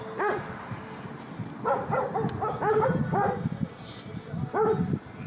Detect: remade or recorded recorded